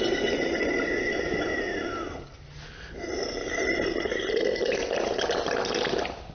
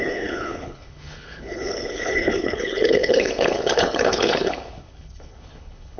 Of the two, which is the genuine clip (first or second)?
first